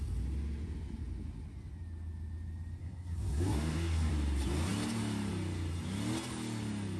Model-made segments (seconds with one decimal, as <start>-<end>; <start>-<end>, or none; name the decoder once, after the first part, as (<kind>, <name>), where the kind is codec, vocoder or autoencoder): 2.8-4.1 (codec, SNAC)